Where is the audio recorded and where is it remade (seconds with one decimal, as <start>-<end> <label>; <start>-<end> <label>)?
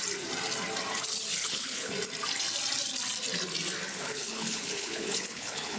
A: 0.0-1.3 recorded; 1.3-1.9 remade; 1.9-3.9 recorded; 3.9-5.8 remade